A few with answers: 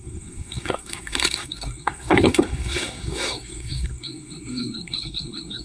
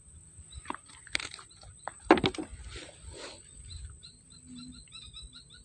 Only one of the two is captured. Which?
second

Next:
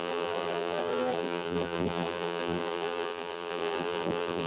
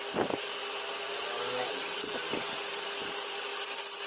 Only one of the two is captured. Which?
second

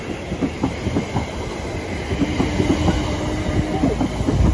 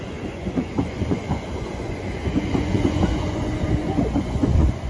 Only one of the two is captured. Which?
first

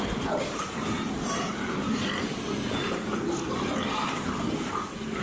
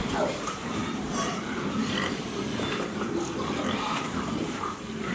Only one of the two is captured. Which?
first